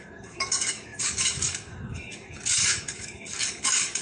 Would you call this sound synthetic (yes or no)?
yes